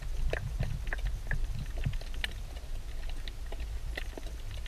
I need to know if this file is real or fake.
real